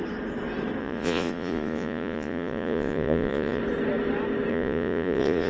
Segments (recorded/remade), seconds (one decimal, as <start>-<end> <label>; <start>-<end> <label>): 0.0-0.8 recorded; 0.8-3.6 remade; 3.6-4.5 recorded; 4.5-5.5 remade

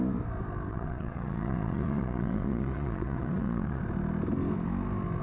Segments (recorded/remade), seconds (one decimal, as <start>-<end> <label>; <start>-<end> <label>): 0.0-0.7 recorded; 0.7-3.8 remade; 3.8-5.2 recorded

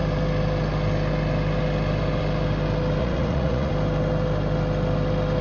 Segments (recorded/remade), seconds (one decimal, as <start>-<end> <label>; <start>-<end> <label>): 0.0-3.0 recorded; 3.0-3.7 remade; 3.7-5.4 recorded